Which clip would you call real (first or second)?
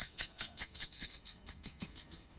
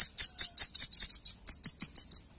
second